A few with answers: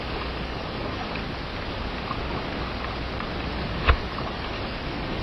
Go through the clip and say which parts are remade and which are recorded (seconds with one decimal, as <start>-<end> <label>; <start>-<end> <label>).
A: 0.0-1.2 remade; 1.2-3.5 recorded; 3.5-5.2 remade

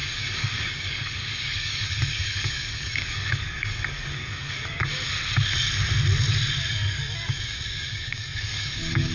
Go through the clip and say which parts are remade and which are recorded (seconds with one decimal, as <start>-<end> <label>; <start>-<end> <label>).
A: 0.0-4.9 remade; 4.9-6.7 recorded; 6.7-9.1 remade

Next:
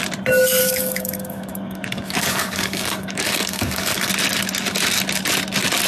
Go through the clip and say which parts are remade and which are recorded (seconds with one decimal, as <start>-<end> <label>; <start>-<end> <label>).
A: 0.0-0.6 recorded; 0.6-4.1 remade; 4.1-5.9 recorded

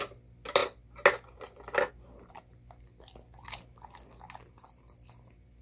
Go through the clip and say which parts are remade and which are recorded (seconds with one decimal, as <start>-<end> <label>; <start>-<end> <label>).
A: 0.0-5.6 recorded

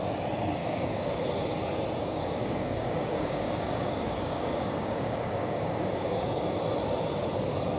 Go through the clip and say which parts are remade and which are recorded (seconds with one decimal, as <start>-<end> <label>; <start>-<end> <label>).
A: 0.0-0.6 recorded; 0.6-1.2 remade; 1.2-2.0 recorded; 2.0-6.6 remade; 6.6-7.8 recorded